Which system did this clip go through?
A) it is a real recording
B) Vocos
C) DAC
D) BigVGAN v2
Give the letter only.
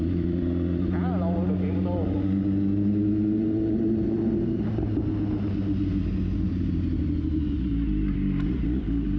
A